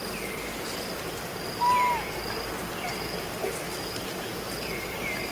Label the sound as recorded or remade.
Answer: recorded